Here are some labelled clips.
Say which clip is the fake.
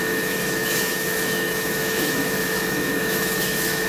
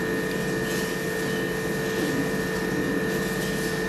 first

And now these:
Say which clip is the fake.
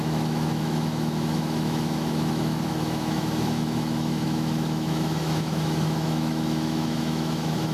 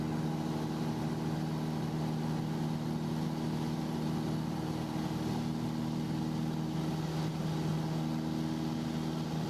first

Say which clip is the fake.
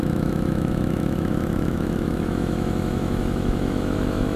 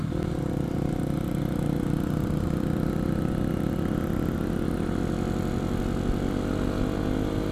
first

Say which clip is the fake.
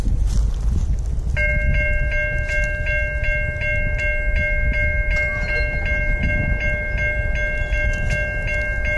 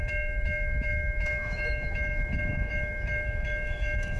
second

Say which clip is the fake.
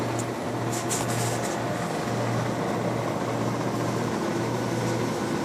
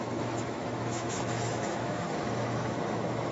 second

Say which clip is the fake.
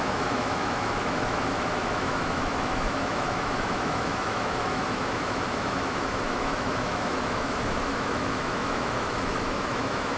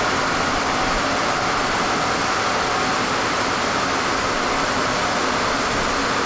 first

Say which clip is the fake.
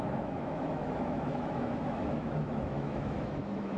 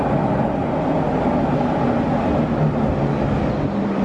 first